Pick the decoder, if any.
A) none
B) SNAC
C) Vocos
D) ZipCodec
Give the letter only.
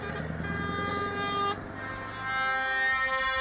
A